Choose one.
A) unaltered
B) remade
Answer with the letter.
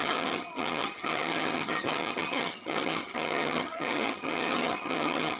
B